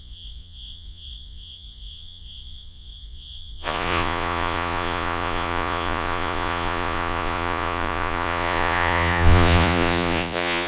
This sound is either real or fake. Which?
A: fake